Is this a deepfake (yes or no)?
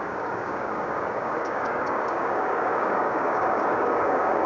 yes